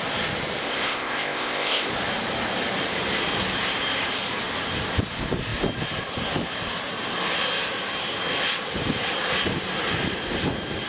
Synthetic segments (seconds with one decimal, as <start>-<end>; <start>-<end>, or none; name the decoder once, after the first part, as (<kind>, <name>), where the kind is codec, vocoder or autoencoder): 0.6-1.9 (codec, ZipCodec)